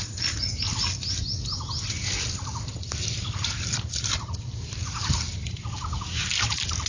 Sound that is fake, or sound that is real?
real